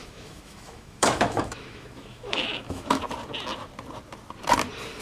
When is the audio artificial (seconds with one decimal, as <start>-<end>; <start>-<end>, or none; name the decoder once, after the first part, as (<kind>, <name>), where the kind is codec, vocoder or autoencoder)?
0.0-3.0 (autoencoder, DAC-VAE)

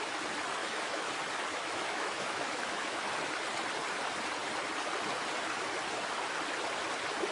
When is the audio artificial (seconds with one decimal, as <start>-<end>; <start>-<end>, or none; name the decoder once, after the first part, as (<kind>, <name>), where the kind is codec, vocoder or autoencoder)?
0.6-1.1 (autoencoder, DAC-VAE); 1.5-3.0

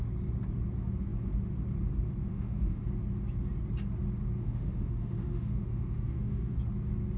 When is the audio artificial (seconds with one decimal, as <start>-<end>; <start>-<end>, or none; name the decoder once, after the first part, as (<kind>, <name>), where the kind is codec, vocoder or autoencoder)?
2.3-2.8 (autoencoder, DAC-VAE); 4.4-6.6

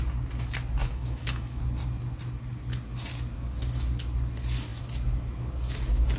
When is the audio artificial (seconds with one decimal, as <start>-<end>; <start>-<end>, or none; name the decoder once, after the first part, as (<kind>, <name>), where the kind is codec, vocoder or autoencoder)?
0.8-1.6 (autoencoder, DAC-VAE)

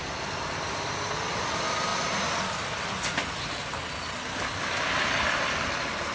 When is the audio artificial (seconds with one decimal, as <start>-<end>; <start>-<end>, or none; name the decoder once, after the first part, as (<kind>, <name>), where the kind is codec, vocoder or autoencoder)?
none